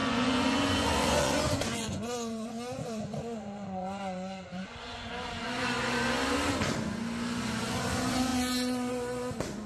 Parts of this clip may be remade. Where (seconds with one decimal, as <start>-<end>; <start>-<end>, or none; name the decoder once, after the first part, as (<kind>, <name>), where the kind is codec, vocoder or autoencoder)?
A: 0.0-5.1 (vocoder, Vocos)

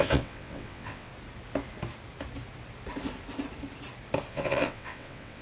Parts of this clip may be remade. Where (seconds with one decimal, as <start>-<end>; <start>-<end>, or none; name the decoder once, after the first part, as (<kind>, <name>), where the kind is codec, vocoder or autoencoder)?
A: 0.0-1.1 (vocoder, WaveNeXt); 4.3-5.4